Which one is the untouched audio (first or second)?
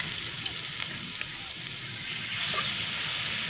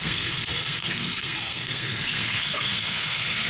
first